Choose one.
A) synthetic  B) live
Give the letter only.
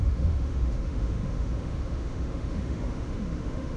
A